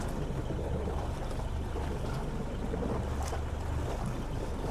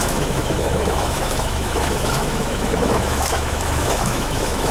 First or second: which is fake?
second